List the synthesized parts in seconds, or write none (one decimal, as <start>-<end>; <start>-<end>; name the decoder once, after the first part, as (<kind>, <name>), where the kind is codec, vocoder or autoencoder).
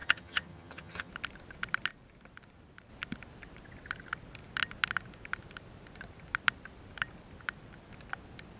0.0-1.1 (vocoder, HiFi-GAN)